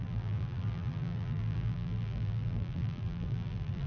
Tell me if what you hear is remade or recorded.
remade